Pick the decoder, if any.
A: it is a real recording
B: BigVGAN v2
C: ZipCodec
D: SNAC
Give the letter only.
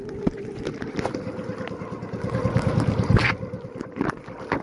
A